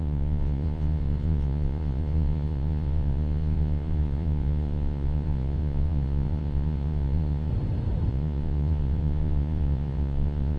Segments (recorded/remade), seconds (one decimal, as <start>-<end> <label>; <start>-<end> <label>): 0.0-7.5 remade; 7.5-8.1 recorded; 8.1-10.6 remade